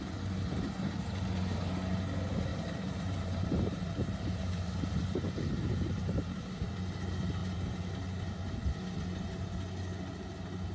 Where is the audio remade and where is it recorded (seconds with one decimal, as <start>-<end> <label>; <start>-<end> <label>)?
0.0-2.5 recorded; 2.5-5.0 remade; 5.0-7.4 recorded; 7.4-7.9 remade; 7.9-10.7 recorded